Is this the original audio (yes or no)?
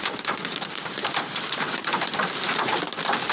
no